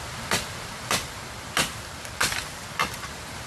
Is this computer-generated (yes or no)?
yes